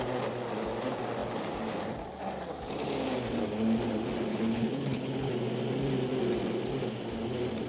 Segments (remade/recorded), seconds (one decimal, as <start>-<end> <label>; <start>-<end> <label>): 0.0-4.3 recorded; 4.3-5.3 remade; 5.3-7.7 recorded